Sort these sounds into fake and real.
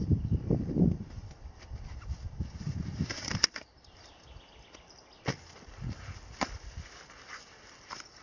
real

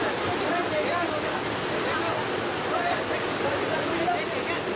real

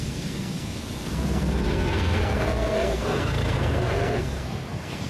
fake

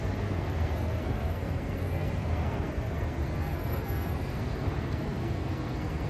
fake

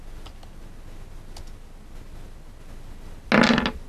real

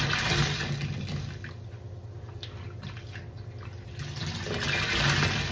real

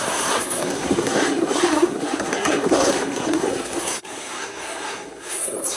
fake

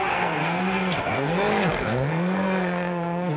fake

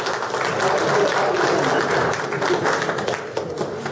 real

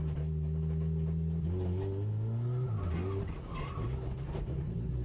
real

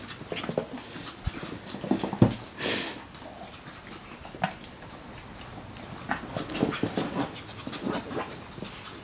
real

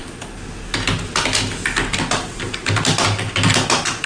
real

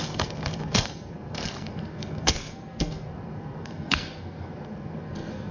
fake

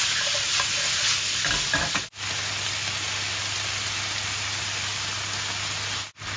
real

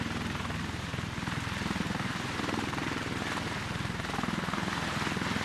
real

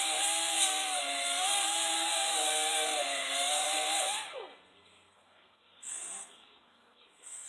fake